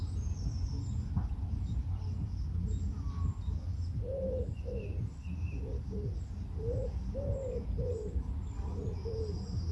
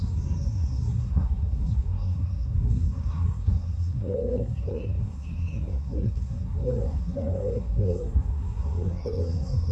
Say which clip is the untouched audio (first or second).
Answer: first